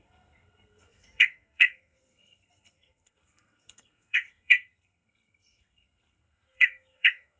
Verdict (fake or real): fake